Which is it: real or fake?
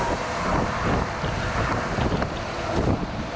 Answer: real